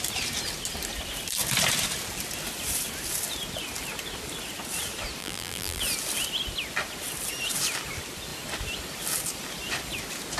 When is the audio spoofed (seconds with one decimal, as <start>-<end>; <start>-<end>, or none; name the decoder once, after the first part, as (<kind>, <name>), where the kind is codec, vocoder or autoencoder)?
5.2-5.8 (vocoder, BigVGAN v2)